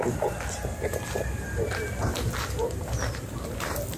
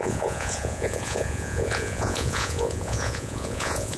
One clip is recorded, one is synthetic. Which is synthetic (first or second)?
second